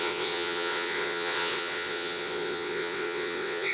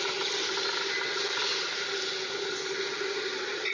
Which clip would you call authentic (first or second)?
second